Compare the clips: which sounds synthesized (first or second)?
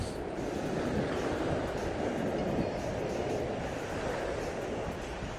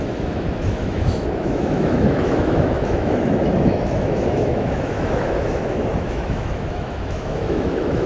second